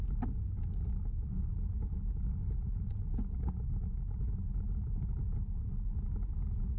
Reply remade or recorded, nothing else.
recorded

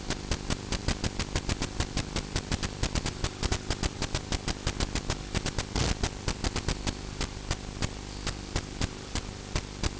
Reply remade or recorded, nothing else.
recorded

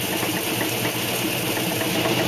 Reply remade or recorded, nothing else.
recorded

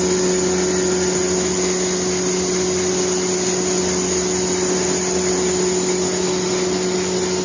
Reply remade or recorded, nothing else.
recorded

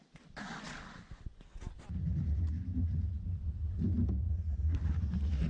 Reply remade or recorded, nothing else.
recorded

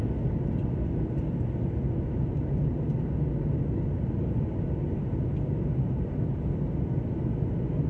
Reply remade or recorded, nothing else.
recorded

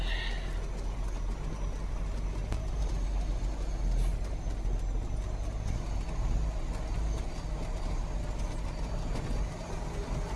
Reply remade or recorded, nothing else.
recorded